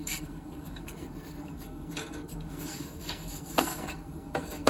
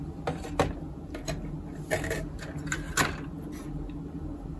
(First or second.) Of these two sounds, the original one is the second